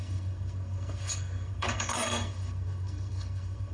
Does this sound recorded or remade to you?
remade